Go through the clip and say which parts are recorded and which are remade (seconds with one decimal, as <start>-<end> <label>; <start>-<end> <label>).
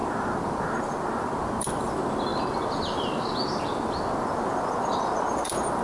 0.0-5.8 recorded